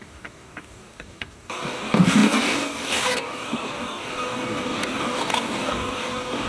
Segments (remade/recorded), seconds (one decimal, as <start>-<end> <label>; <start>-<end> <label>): 0.0-6.5 remade